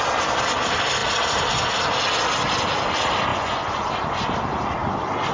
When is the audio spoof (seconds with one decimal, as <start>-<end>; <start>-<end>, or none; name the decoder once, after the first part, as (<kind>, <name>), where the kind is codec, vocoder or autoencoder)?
3.3-3.9 (vocoder, Vocos)